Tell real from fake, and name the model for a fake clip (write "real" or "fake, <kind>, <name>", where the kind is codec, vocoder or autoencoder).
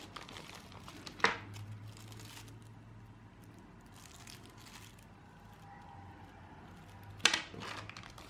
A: real